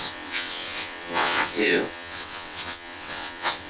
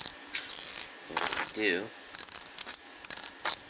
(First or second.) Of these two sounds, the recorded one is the second